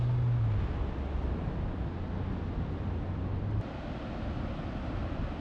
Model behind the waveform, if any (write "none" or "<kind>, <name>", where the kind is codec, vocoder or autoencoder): none